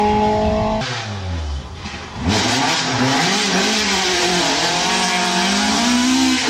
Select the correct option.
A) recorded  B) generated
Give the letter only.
A